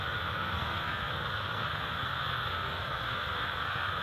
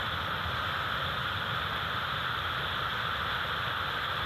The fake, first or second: first